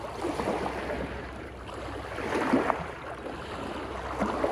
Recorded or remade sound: recorded